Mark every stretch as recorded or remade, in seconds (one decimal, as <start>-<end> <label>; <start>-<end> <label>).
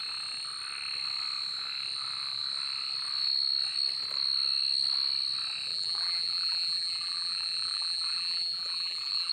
0.0-5.7 recorded; 5.7-9.3 remade